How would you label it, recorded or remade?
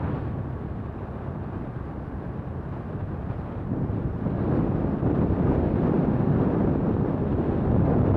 remade